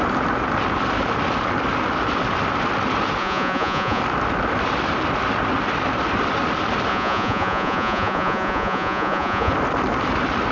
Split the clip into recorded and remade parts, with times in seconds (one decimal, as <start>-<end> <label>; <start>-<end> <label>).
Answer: 0.0-3.2 recorded; 3.2-4.0 remade; 4.0-6.9 recorded; 6.9-9.5 remade; 9.5-10.5 recorded